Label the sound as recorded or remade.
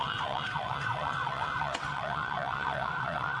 remade